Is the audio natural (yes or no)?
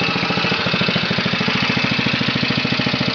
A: yes